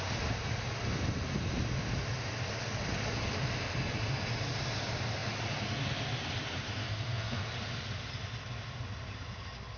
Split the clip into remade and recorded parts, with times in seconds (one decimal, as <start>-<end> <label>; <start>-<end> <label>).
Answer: 0.0-6.8 recorded; 6.8-7.5 remade; 7.5-9.8 recorded